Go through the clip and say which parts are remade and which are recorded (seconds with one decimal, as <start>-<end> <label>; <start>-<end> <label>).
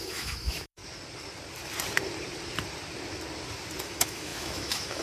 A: 0.0-0.8 remade; 0.8-3.8 recorded; 3.8-5.0 remade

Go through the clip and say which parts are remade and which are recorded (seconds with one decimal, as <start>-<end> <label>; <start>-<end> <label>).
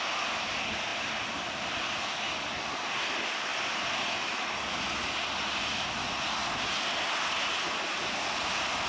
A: 0.0-8.9 recorded